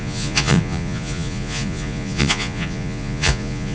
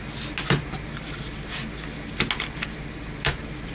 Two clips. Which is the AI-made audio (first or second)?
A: first